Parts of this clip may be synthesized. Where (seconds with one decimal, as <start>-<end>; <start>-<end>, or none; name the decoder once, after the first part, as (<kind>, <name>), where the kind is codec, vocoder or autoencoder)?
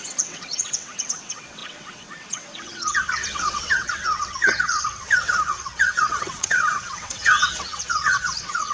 0.0-8.7 (vocoder, WaveNeXt)